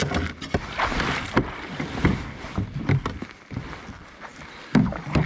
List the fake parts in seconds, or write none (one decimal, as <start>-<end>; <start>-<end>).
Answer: none